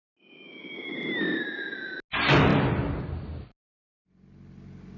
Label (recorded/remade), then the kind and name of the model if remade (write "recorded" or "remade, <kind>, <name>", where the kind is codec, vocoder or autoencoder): recorded